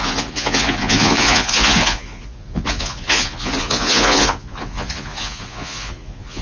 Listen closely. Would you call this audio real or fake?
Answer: fake